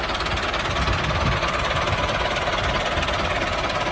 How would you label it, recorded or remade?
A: recorded